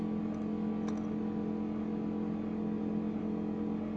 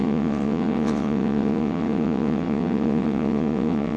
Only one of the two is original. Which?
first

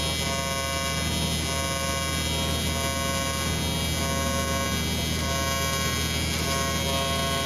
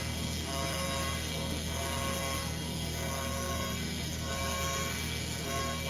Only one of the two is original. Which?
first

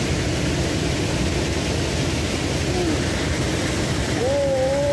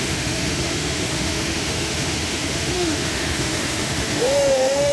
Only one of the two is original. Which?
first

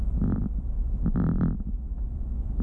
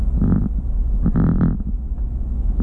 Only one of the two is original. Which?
second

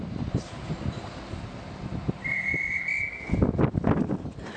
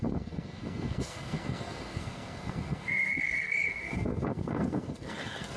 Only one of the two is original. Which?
first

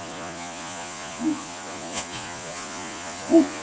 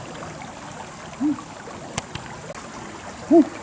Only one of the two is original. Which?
second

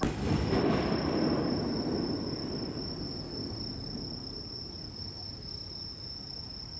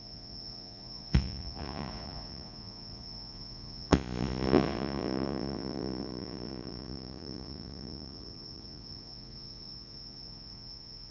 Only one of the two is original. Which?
first